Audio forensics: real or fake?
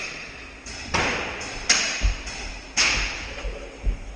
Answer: real